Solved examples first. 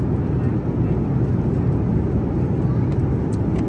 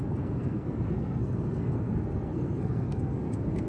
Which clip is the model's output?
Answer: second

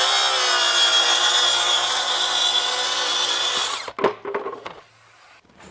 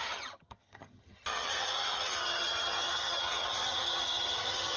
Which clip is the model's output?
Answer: second